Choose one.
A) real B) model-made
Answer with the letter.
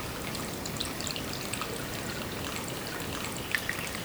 A